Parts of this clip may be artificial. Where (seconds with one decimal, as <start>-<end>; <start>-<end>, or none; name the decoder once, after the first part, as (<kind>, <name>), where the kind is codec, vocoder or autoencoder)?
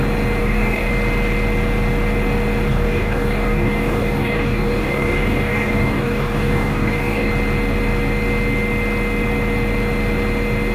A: 0.4-0.9 (codec, DAC); 2.7-7.3